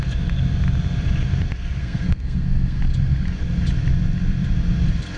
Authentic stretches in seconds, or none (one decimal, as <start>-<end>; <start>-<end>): 0.0-1.8; 2.8-5.2